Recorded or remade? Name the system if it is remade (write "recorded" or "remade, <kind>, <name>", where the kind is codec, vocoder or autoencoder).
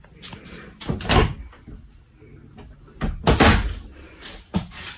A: recorded